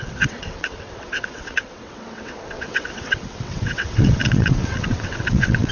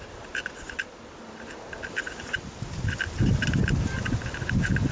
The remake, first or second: first